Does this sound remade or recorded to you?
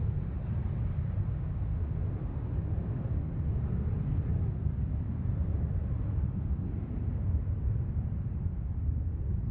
recorded